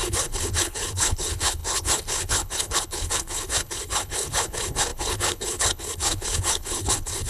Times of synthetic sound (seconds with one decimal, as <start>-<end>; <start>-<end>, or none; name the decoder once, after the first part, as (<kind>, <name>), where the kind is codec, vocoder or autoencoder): 0.0-7.3 (codec, HILCodec)